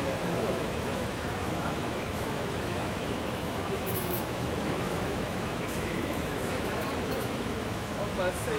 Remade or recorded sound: remade